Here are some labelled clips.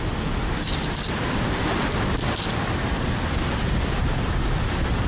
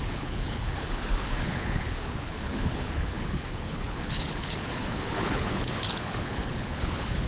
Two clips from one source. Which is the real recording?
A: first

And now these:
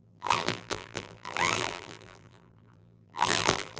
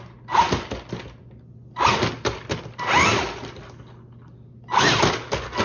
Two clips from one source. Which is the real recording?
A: second